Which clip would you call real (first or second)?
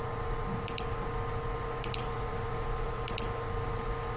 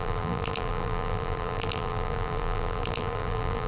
first